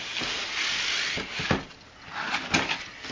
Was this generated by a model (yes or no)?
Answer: no